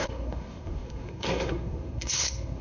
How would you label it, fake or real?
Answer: fake